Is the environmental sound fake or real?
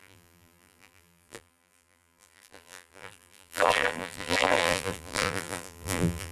fake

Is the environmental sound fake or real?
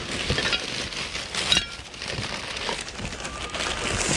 real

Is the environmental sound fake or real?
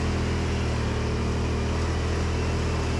real